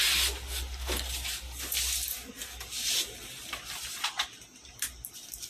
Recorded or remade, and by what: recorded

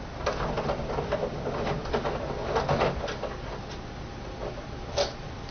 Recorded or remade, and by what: recorded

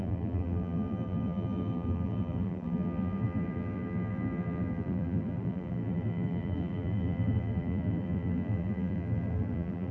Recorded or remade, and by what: remade, vocoder, BigVGAN v2